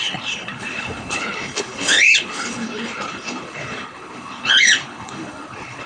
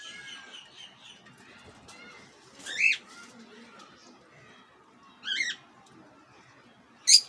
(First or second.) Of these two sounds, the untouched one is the second